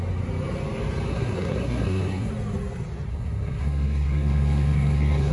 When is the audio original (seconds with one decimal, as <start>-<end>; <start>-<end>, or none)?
0.0-1.1; 2.3-3.1